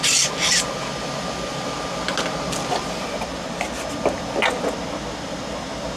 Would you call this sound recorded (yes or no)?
yes